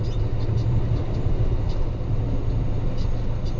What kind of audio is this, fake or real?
real